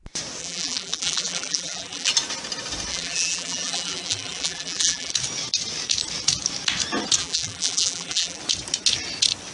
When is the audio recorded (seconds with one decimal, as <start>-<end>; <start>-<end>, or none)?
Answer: 0.0-0.4; 2.1-2.9; 5.1-7.2; 8.4-9.5